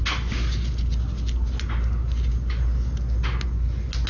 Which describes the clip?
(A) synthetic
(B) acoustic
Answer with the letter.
B